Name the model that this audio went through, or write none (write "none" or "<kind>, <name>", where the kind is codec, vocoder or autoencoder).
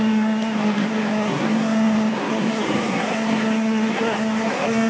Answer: codec, SNAC